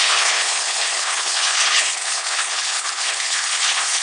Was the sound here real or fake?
fake